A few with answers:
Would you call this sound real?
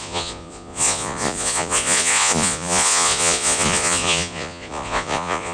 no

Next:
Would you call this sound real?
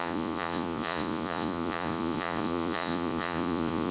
no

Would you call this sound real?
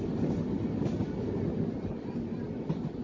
yes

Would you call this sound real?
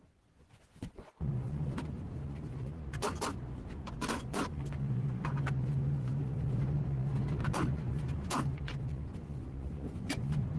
no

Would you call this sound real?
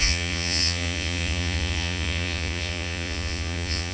no